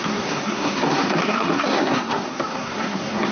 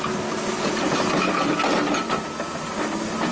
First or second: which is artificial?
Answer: first